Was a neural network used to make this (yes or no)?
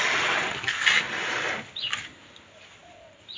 no